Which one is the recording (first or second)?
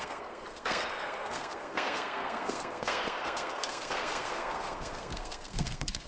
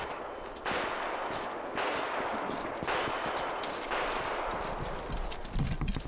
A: second